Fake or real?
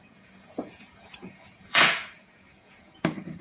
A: fake